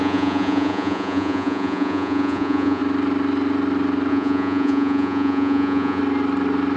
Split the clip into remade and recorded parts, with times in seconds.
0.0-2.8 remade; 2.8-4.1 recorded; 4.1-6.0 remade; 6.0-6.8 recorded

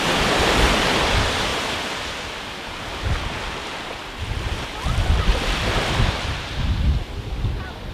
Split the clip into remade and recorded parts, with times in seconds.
0.0-7.9 recorded

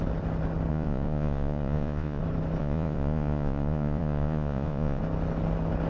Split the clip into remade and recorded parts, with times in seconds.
0.0-0.7 recorded; 0.7-2.2 remade; 2.2-2.6 recorded; 2.6-5.0 remade; 5.0-5.9 recorded